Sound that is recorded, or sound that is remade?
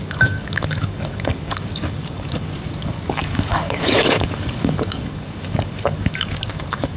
remade